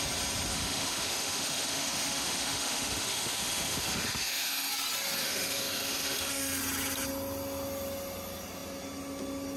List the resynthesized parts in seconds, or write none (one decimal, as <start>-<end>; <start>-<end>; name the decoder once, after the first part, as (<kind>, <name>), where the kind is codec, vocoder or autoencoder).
0.5-4.7 (autoencoder, DAC-VAE); 5.2-6.6